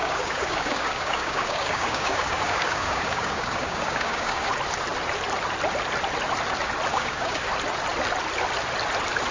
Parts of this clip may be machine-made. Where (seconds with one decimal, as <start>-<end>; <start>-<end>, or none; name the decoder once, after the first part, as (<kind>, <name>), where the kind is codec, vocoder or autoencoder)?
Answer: 0.0-4.5 (codec, DAC); 6.9-7.5